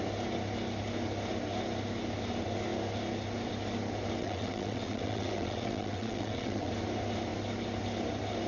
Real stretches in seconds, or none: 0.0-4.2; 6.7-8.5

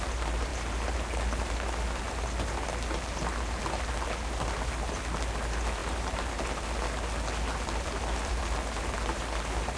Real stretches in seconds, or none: 0.0-9.8

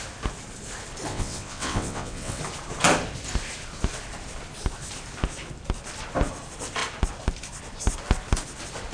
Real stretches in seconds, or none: 0.0-1.1; 2.4-8.9

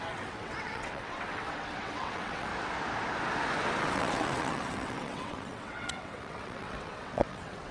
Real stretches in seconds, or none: 2.5-3.8